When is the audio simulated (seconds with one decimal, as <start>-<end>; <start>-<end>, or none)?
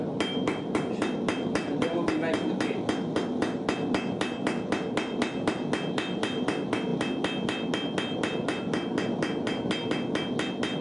none